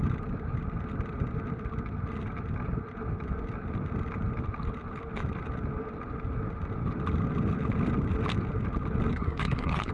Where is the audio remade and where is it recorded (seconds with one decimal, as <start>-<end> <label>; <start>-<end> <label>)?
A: 0.0-9.1 recorded; 9.1-9.9 remade